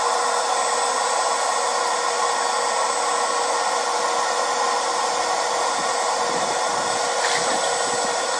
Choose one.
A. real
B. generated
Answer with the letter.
A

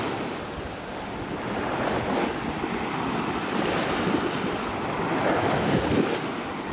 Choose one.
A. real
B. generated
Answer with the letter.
A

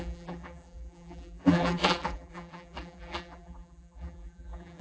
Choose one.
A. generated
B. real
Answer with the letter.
A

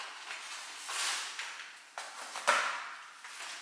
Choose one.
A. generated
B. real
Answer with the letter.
B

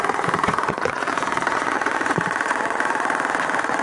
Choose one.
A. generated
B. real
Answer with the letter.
A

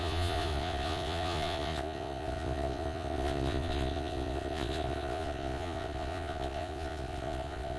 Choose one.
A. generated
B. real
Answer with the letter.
A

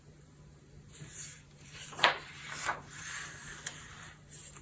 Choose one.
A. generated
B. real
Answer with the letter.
A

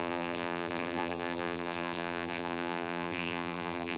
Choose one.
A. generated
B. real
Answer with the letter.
A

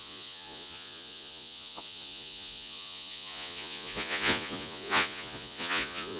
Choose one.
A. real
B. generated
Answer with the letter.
B